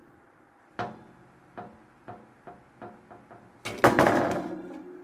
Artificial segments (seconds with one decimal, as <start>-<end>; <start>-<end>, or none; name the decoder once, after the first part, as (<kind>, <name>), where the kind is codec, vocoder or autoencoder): none